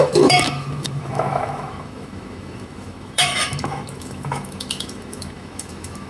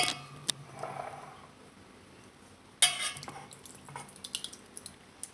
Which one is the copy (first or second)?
first